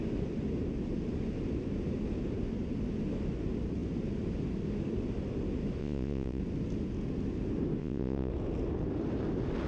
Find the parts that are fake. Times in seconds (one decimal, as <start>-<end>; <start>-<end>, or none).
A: 5.8-6.4; 7.8-8.3